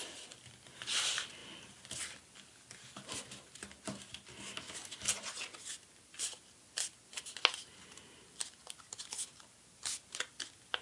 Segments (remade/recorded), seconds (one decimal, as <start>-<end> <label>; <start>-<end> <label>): 0.0-10.8 recorded